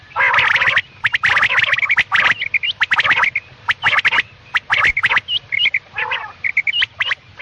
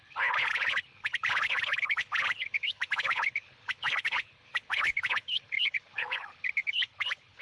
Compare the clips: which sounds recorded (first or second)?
first